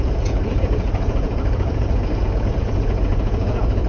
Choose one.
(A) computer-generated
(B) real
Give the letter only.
A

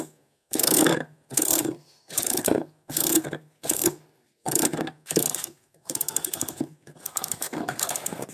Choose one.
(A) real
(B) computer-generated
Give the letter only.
B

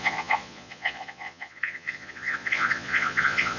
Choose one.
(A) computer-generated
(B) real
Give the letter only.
A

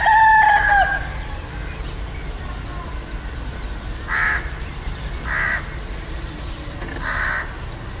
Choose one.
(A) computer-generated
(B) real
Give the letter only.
B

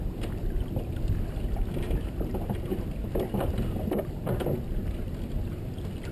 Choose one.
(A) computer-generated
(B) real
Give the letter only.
B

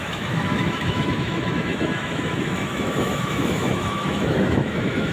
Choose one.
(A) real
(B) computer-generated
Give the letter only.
B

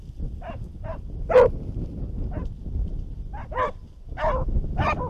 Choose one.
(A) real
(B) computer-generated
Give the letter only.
A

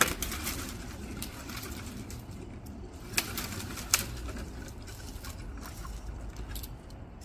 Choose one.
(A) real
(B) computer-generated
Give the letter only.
B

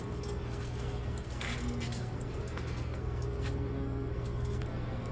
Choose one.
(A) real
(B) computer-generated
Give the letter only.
B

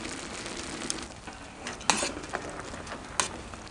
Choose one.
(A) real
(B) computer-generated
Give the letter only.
A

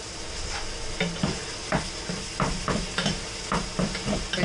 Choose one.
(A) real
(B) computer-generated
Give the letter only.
A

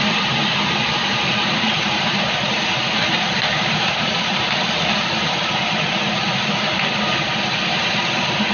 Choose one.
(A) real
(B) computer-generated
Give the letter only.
B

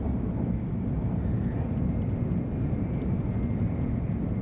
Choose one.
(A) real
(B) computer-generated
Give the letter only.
A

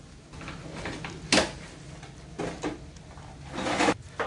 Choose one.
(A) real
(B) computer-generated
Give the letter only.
A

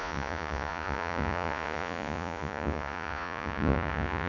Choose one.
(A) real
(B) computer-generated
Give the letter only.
B